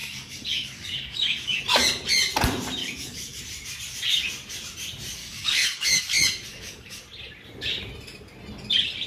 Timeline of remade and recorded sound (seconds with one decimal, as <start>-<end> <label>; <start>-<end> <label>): 0.0-1.6 remade; 1.6-2.8 recorded; 2.8-3.4 remade; 3.4-5.2 recorded; 5.2-6.0 remade; 6.0-6.5 recorded; 6.5-7.0 remade; 7.0-9.1 recorded

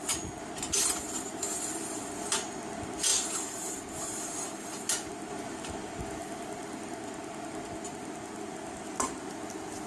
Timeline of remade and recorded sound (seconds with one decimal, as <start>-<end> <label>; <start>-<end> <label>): 0.0-9.9 recorded

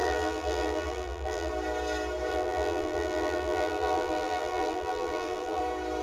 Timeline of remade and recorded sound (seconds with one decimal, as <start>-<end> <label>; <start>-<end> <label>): 0.0-1.5 remade; 1.5-2.3 recorded; 2.3-5.6 remade; 5.6-6.0 recorded

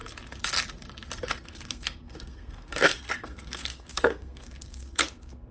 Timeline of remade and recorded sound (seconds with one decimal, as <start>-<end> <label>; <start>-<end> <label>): 0.0-1.3 recorded; 1.3-5.5 remade